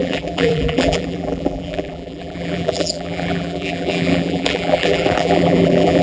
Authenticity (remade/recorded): remade